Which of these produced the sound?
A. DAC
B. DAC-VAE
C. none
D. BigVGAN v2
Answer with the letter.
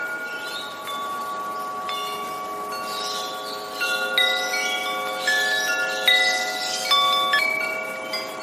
C